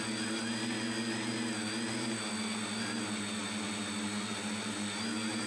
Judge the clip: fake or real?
real